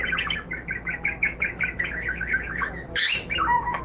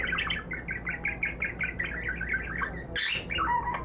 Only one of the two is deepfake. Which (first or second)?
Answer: first